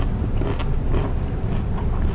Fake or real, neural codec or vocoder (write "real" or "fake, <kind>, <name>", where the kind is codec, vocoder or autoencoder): real